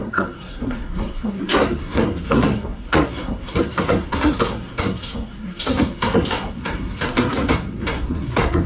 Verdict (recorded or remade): remade